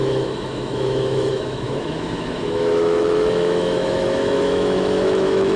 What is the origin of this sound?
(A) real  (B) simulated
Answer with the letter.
B